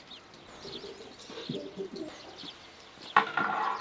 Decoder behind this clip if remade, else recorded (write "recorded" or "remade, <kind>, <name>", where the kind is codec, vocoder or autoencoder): recorded